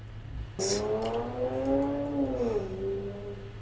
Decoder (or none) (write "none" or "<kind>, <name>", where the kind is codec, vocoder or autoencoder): none